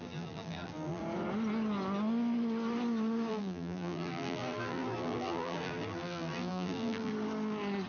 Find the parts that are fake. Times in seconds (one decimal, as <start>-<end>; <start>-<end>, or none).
0.0-1.0; 3.3-7.1